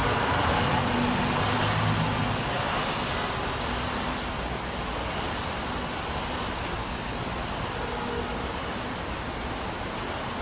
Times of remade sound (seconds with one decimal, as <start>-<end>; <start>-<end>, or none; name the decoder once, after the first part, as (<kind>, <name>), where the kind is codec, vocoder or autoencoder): 0.0-1.2 (vocoder, BigVGAN v2)